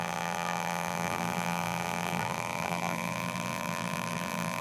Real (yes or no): no